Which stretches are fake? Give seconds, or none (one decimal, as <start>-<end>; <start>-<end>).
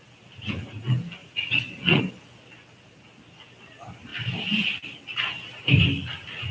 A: 1.2-2.0